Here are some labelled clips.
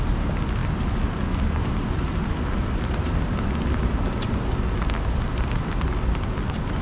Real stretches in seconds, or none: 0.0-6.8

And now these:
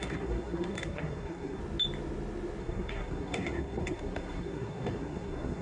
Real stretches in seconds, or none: 1.6-2.6

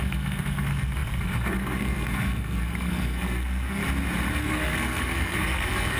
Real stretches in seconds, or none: 3.8-4.4